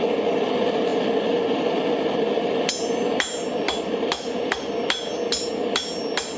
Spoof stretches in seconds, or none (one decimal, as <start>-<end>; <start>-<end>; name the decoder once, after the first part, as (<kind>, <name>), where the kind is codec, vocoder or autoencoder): none